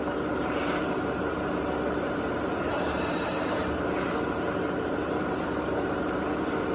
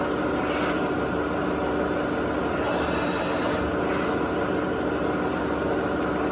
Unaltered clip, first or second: second